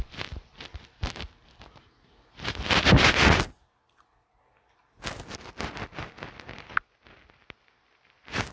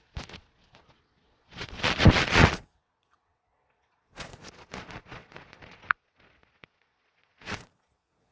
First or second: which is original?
first